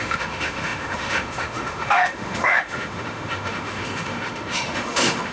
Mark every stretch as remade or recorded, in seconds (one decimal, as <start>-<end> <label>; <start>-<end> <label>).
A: 0.0-5.3 remade